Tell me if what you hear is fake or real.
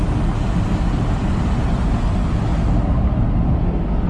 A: real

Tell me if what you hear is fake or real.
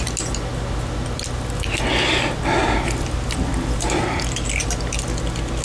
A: real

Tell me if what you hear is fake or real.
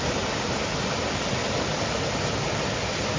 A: real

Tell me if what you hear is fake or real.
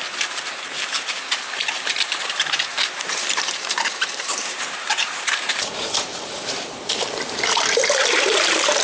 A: fake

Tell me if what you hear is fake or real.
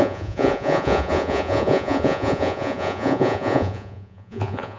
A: fake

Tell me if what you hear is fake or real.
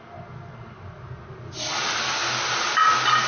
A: real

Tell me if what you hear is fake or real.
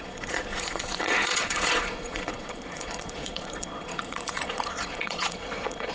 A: fake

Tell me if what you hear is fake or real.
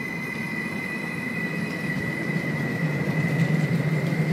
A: fake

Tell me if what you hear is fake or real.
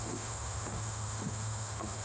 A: fake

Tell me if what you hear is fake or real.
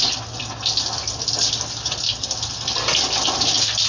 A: real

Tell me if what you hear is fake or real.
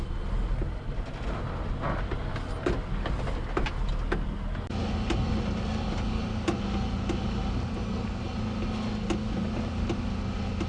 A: real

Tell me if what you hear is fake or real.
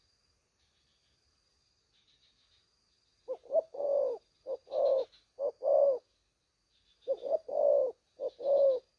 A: real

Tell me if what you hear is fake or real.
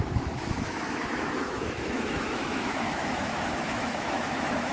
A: fake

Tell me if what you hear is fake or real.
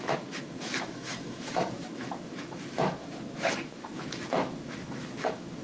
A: fake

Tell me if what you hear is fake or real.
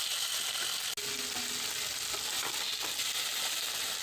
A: real